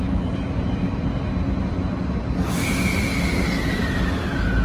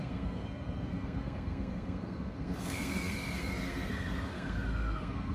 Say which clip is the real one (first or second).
first